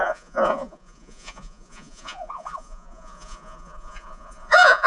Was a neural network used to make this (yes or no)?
yes